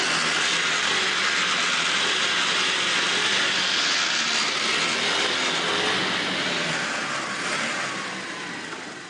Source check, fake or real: real